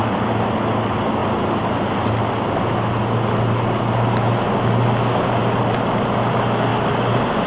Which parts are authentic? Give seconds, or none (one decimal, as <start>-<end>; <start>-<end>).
0.0-7.5